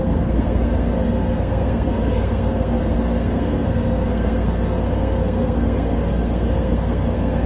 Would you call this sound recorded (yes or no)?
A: no